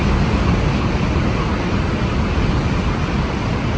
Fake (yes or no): no